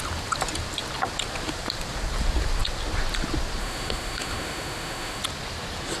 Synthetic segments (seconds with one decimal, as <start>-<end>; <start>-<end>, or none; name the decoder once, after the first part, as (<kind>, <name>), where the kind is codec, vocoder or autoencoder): 3.6-5.2 (autoencoder, DAC-VAE)